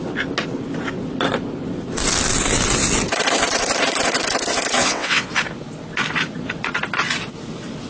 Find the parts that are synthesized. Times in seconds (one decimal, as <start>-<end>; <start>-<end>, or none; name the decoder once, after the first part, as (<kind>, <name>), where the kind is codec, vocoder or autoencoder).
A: 4.8-5.3 (vocoder, WaveNeXt)